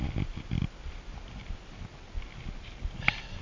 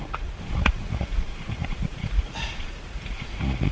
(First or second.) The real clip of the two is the first